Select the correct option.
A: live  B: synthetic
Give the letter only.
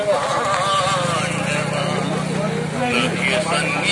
A